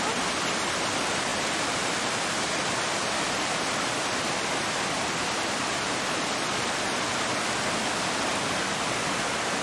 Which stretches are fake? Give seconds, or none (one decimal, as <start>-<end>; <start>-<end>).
none